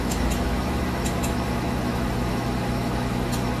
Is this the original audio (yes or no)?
no